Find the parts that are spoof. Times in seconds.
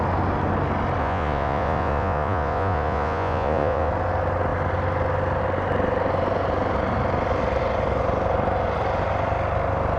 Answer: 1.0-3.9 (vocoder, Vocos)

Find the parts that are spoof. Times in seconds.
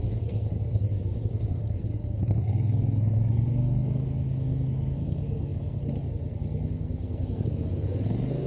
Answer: 0.0-8.5 (codec, SNAC)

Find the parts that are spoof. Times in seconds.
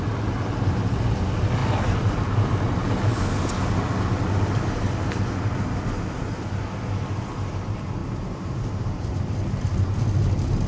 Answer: 8.0-9.3 (vocoder, BigVGAN v2)